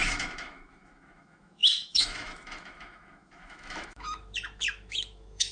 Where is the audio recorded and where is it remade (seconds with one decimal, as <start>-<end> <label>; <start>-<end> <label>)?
0.0-5.5 remade